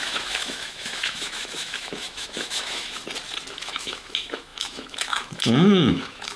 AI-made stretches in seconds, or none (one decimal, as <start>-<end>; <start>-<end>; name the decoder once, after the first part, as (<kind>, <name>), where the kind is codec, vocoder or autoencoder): 0.0-3.0 (autoencoder, DAC-VAE); 3.5-6.4